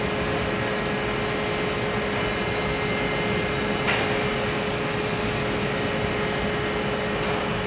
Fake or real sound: real